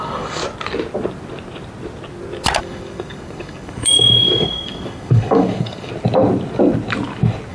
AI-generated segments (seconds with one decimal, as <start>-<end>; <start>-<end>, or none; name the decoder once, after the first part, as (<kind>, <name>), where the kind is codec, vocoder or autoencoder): 0.0-0.4 (codec, DAC); 2.6-5.9